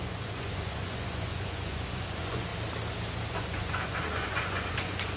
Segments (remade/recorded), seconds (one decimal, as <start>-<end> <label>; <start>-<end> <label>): 0.0-2.5 remade; 2.5-3.3 recorded; 3.3-5.2 remade